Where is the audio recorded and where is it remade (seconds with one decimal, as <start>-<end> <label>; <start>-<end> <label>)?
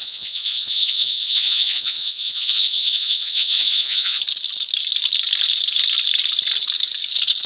0.0-4.2 remade; 4.2-7.5 recorded